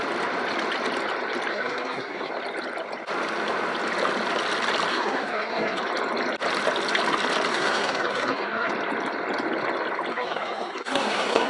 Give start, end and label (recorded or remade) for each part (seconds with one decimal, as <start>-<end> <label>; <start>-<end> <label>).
0.0-1.5 recorded; 1.5-2.3 remade; 2.3-4.9 recorded; 4.9-5.8 remade; 5.8-7.5 recorded; 7.5-8.7 remade; 8.7-10.1 recorded; 10.1-11.5 remade